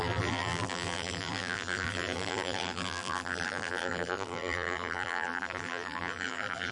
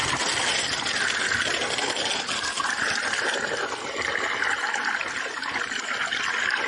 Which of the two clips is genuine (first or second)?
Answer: second